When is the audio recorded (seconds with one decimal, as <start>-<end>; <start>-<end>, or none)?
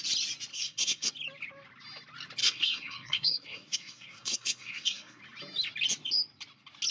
0.0-0.5; 1.1-2.4; 5.2-6.9